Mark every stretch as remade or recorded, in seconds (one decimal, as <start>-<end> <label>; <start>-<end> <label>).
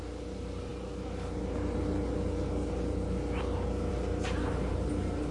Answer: 0.0-5.3 recorded